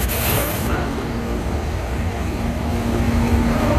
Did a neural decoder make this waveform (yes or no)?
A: yes